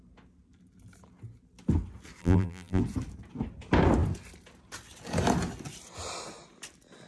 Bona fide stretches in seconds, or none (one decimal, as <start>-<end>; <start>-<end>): 0.0-2.2; 2.8-7.1